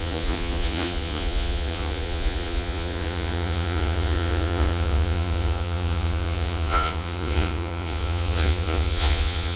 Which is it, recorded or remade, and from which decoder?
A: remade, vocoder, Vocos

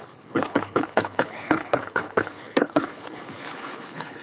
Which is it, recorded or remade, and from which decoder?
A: remade, codec, HILCodec